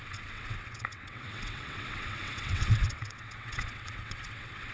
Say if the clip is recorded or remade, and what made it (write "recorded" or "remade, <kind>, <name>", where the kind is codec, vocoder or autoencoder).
remade, vocoder, WaveNeXt